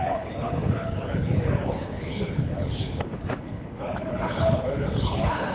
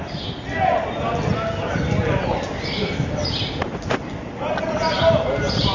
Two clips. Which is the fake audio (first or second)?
first